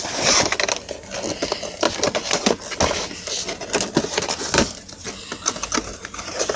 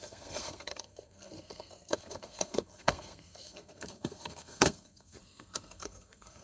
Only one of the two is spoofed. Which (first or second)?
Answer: second